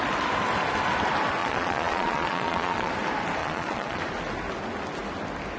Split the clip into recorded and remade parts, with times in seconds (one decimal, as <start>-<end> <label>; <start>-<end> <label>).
0.0-1.4 recorded; 1.4-2.9 remade; 2.9-3.4 recorded; 3.4-4.0 remade; 4.0-5.6 recorded